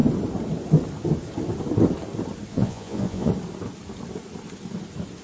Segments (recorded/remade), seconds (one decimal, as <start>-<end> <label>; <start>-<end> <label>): 0.0-2.5 recorded; 2.5-3.3 remade; 3.3-5.2 recorded